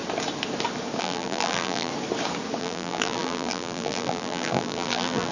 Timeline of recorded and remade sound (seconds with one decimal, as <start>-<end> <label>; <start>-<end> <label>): 0.0-1.0 recorded; 1.0-1.9 remade; 1.9-2.6 recorded; 2.6-5.3 remade